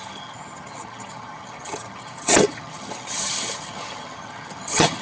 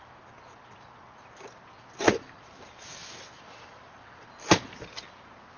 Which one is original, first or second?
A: second